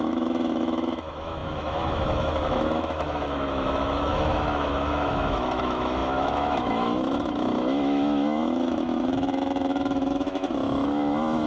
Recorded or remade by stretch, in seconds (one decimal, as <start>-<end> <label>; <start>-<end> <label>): 0.0-11.5 remade